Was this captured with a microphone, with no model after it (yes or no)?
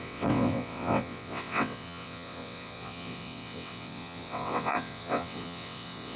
no